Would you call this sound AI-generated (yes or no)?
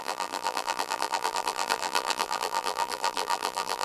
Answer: yes